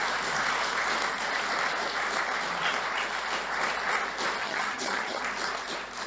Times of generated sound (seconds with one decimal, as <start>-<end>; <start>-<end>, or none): 4.4-5.2